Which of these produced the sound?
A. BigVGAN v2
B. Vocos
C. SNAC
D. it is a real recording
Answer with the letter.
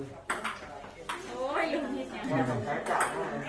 D